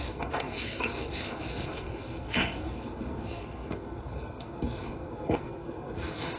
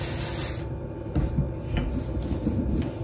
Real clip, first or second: second